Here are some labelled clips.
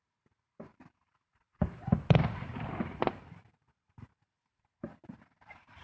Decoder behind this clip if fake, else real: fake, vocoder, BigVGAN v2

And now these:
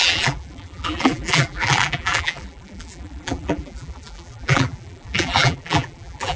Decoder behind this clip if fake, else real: fake, vocoder, BigVGAN v2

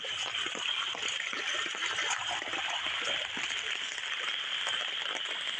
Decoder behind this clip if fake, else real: fake, vocoder, BigVGAN v2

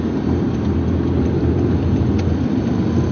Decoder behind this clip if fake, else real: real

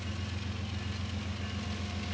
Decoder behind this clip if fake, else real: real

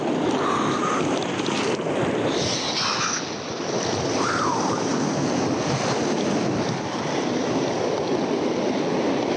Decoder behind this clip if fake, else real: real